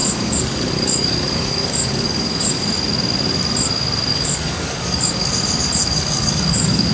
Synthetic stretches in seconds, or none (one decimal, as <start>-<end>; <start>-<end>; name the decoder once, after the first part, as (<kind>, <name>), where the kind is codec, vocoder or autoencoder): 0.0-2.6 (codec, DAC); 4.1-5.3; 5.8-6.9